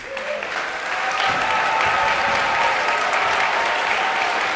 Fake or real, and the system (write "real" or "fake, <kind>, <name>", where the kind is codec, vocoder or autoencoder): real